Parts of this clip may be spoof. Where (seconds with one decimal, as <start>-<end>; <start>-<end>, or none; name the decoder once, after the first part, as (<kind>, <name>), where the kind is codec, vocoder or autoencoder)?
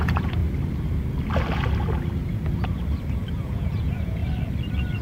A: 0.0-0.4 (vocoder, Vocos); 3.4-4.2